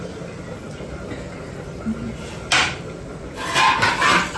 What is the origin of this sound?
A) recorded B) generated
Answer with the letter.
A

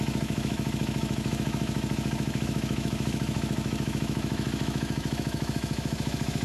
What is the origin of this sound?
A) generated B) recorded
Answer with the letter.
A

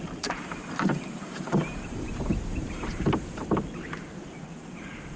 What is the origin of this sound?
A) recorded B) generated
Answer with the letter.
B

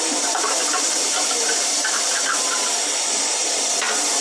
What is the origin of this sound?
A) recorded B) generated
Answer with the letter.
B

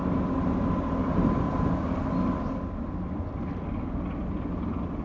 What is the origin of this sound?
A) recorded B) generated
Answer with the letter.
A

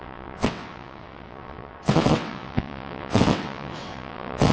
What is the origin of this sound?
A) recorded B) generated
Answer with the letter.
B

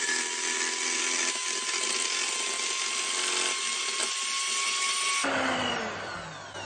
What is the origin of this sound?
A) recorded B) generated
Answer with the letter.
A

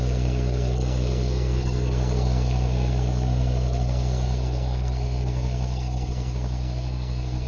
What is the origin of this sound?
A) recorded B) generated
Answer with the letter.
B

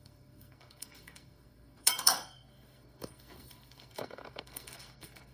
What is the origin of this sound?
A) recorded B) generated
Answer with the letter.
B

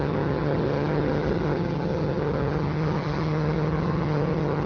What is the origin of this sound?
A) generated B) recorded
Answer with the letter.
A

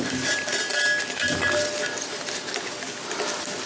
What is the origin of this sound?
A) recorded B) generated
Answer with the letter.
A